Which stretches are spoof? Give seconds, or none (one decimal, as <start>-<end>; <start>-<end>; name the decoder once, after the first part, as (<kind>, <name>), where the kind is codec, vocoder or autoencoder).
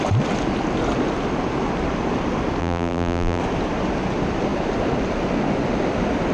2.6-3.4 (vocoder, BigVGAN v2)